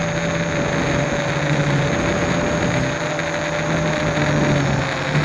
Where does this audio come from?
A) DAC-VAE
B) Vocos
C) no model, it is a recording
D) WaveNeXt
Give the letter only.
C